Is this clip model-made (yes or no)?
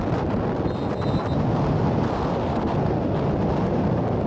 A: no